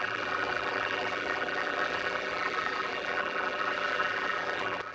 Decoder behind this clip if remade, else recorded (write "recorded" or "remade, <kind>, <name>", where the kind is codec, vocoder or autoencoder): remade, vocoder, BigVGAN v2